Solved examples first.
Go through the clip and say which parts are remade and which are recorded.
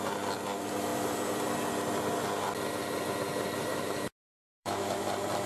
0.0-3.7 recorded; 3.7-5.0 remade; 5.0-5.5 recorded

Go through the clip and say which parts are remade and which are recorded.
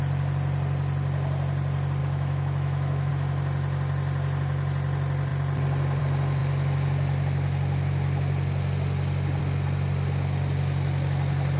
0.0-2.0 recorded; 2.0-3.1 remade; 3.1-11.6 recorded